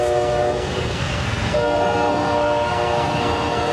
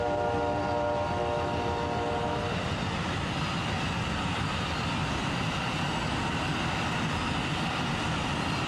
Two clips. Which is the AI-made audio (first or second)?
first